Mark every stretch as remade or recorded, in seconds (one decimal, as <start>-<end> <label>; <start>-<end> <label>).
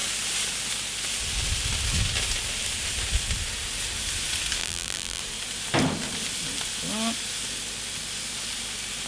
0.0-4.6 recorded; 4.6-5.2 remade; 5.2-9.1 recorded